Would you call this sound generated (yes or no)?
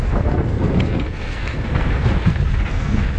yes